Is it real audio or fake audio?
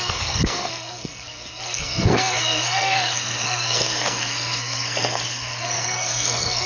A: fake